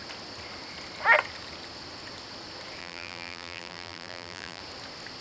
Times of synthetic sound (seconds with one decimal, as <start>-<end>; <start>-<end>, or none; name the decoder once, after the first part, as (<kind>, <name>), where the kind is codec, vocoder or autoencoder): 2.8-4.6 (vocoder, BigVGAN v2)